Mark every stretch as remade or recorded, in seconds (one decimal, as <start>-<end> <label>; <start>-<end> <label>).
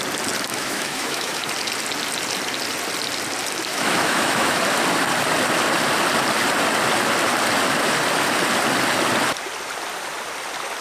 0.0-0.5 recorded; 0.5-1.4 remade; 1.4-3.7 recorded; 3.7-4.6 remade; 4.6-10.8 recorded